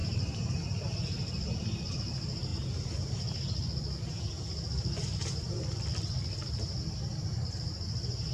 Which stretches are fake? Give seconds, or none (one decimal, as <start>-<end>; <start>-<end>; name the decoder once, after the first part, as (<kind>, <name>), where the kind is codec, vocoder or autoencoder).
none